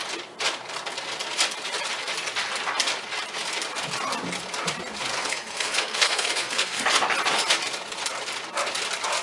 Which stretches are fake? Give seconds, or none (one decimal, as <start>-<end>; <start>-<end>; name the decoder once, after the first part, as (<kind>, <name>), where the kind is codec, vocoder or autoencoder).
5.1-6.8 (codec, SNAC)